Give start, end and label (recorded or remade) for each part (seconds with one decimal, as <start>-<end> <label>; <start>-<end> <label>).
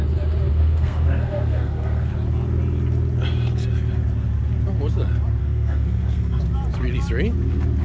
0.0-0.5 recorded; 0.5-2.1 remade; 2.1-5.4 recorded; 5.4-6.4 remade; 6.4-7.8 recorded